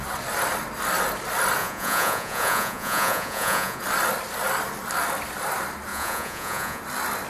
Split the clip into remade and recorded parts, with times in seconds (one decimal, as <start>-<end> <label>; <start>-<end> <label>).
0.0-1.6 recorded; 1.6-3.8 remade; 3.8-5.9 recorded; 5.9-6.8 remade; 6.8-7.3 recorded